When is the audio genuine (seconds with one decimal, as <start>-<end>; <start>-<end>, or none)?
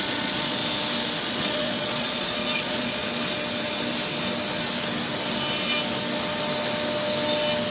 0.6-1.2; 3.0-7.7